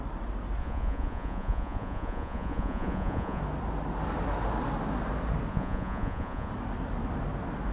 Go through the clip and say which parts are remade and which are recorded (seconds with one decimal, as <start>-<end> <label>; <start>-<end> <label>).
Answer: 0.0-0.6 recorded; 0.6-3.4 remade; 3.4-5.5 recorded; 5.5-6.5 remade; 6.5-7.7 recorded